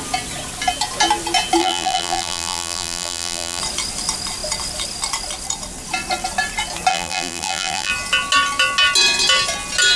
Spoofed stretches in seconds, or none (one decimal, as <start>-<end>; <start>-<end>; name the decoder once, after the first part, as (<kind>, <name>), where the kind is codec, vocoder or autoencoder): 1.6-3.6 (vocoder, BigVGAN v2); 6.9-7.9

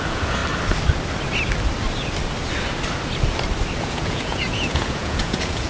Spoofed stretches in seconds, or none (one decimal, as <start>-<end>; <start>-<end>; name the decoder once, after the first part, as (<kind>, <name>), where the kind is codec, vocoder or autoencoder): 0.0-0.4 (vocoder, Vocos); 3.8-5.7

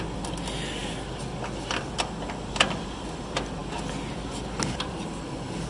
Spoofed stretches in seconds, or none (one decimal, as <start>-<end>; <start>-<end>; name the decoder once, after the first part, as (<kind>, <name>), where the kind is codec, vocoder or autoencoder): none

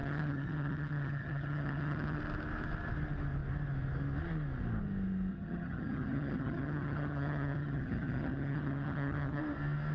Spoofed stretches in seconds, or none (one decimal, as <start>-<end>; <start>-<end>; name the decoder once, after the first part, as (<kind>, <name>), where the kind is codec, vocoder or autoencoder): 0.0-2.2 (vocoder, HiFi-GAN); 5.3-9.4

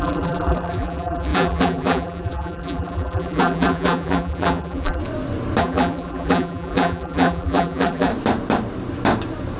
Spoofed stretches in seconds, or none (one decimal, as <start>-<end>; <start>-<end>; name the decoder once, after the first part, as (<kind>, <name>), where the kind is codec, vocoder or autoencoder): 0.0-5.0 (vocoder, BigVGAN v2); 5.6-8.1

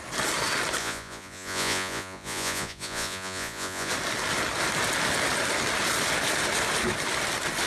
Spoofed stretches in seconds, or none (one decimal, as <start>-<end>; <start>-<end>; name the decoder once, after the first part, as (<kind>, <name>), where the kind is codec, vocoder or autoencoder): 0.8-3.9 (vocoder, Vocos)

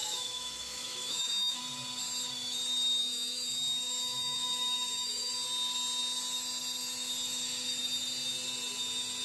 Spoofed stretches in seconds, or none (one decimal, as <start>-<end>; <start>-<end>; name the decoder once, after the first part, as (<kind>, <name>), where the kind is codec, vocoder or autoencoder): 0.0-1.6 (autoencoder, DAC-VAE); 3.0-5.3